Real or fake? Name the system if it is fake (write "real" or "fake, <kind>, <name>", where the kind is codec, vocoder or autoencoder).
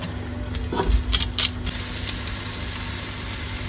real